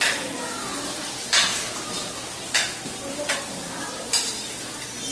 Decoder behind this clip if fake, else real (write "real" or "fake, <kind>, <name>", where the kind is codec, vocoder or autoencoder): real